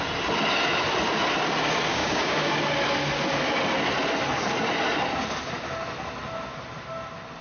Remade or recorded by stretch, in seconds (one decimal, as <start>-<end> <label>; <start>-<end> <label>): 0.0-1.9 recorded; 1.9-2.5 remade; 2.5-7.4 recorded

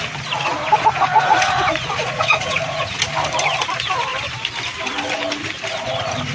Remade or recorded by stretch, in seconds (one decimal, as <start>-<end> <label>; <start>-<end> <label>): 0.0-0.5 recorded; 0.5-3.0 remade; 3.0-6.3 recorded

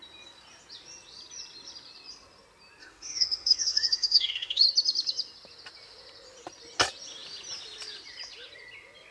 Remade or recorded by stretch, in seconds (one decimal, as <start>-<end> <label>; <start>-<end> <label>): 0.0-2.8 recorded; 2.8-4.6 remade; 4.6-9.1 recorded